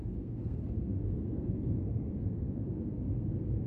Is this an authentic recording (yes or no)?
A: no